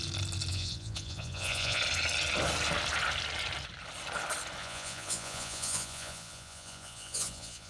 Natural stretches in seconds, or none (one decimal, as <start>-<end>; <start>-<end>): 0.0-0.5; 1.8-4.6